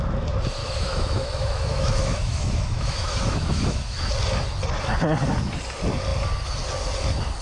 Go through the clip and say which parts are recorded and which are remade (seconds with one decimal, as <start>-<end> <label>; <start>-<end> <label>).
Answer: 0.0-0.6 recorded; 0.6-4.1 remade; 4.1-7.4 recorded